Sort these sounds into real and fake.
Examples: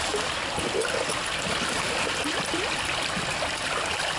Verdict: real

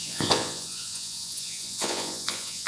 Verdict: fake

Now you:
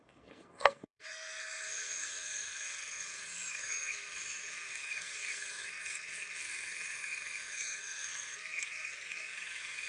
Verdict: fake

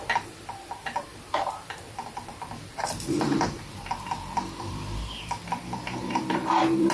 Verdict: fake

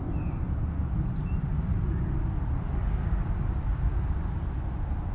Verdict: real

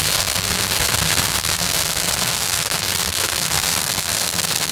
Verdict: fake